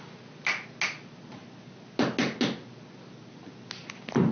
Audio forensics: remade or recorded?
recorded